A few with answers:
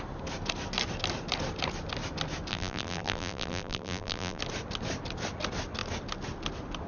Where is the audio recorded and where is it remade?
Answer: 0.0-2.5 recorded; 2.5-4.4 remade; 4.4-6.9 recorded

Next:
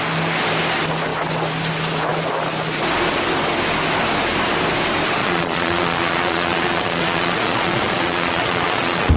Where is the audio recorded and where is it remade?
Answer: 0.0-5.2 recorded; 5.2-9.2 remade

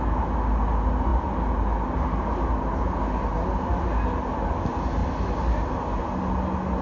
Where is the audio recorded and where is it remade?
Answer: 0.0-6.8 recorded

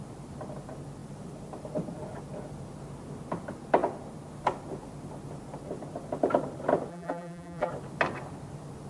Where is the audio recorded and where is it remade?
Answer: 0.0-6.9 recorded; 6.9-7.7 remade; 7.7-8.9 recorded